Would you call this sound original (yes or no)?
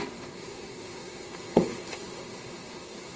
no